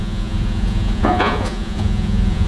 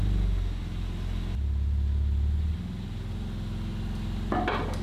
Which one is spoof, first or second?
first